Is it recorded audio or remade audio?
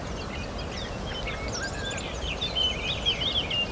recorded